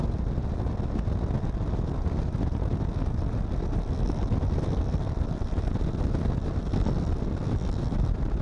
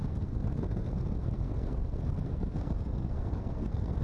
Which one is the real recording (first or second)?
first